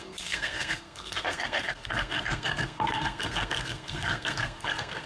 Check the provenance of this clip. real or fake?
fake